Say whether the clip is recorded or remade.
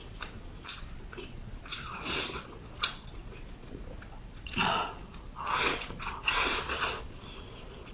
remade